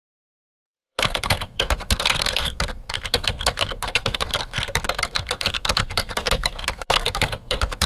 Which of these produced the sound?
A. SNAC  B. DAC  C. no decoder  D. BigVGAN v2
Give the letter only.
A